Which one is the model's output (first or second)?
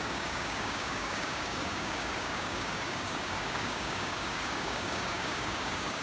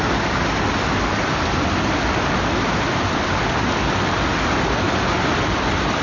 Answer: first